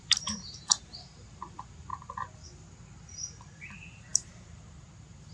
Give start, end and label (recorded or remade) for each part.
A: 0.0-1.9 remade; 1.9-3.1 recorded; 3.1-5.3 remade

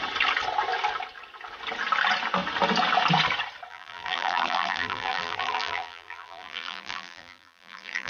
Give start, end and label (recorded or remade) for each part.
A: 0.0-3.7 recorded; 3.7-8.1 remade

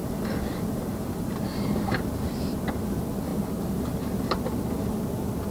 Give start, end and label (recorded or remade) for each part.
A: 0.0-0.8 recorded; 0.8-3.3 remade; 3.3-5.5 recorded

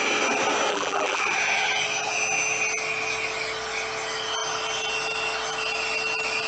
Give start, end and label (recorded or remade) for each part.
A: 0.0-0.7 recorded; 0.7-1.2 remade; 1.2-6.5 recorded

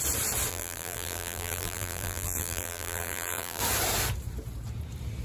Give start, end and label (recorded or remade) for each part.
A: 0.0-0.5 recorded; 0.5-3.6 remade; 3.6-5.2 recorded

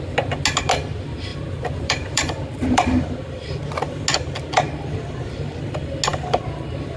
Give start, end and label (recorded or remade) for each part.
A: 0.0-1.3 recorded; 1.3-3.9 remade; 3.9-7.0 recorded